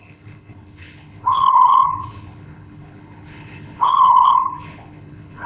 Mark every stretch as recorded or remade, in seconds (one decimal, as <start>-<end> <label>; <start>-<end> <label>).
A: 0.0-5.5 remade